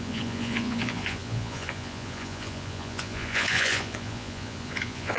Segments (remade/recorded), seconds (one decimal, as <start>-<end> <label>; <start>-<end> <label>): 0.0-5.2 remade